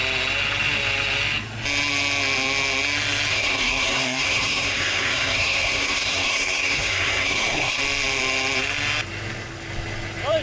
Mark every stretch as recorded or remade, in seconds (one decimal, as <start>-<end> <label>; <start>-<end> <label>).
0.0-3.3 recorded; 3.3-7.8 remade; 7.8-10.4 recorded